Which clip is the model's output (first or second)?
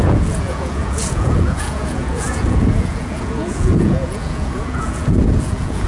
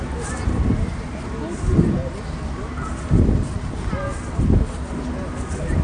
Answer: first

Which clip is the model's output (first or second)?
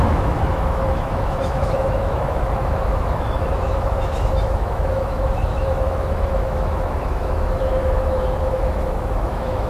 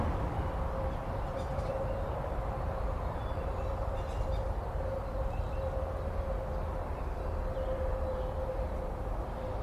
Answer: first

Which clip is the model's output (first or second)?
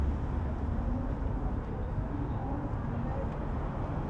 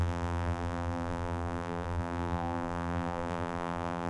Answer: second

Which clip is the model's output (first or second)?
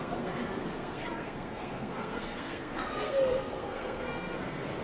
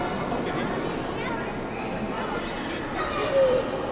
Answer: first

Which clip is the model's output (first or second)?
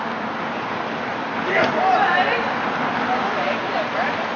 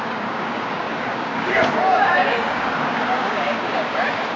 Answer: second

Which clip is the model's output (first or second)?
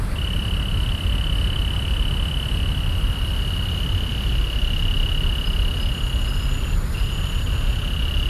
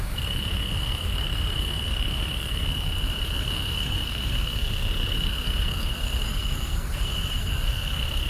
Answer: second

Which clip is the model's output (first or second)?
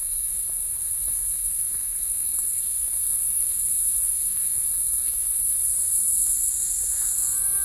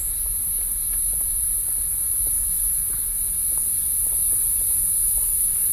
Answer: first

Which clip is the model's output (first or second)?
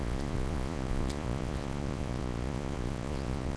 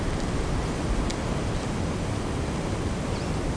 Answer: first